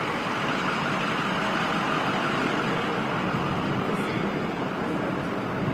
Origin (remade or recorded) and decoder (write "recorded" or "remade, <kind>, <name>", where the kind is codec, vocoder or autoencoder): recorded